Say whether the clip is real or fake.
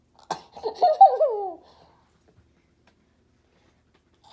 real